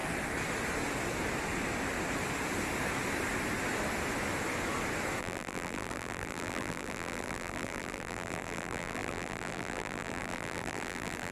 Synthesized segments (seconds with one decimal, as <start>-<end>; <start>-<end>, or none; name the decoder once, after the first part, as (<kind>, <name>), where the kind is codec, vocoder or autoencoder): 5.2-11.3 (vocoder, BigVGAN v2)